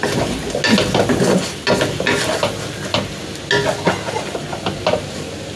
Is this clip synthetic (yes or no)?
no